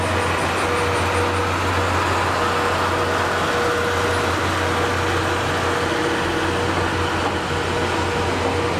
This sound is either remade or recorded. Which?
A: recorded